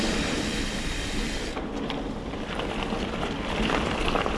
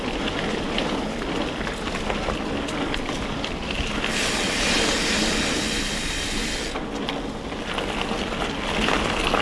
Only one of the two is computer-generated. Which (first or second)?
first